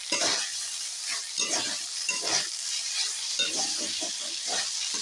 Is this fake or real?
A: fake